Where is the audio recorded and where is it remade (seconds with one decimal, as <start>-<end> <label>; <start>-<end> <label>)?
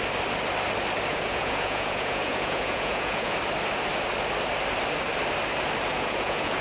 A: 0.0-1.1 recorded; 1.1-3.4 remade; 3.4-5.9 recorded; 5.9-6.6 remade